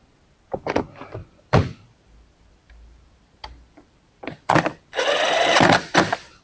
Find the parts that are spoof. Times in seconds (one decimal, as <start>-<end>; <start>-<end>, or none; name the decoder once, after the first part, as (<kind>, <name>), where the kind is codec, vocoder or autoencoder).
1.2-5.0 (vocoder, BigVGAN v2)